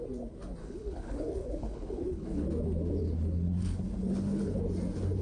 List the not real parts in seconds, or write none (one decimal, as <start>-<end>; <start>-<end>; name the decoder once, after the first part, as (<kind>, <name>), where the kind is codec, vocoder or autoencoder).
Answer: 0.6-2.5 (codec, HILCodec); 3.0-4.6